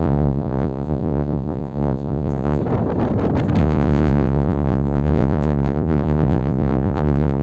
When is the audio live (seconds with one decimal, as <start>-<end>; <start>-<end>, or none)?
2.6-3.6